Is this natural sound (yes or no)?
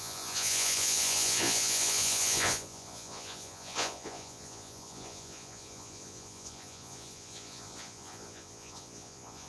no